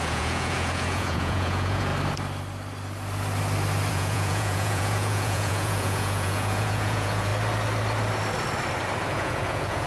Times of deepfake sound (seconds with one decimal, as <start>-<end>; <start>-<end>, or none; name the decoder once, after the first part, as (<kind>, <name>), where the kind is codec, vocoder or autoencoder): 0.0-1.9 (vocoder, Vocos); 3.9-7.3; 9.1-9.9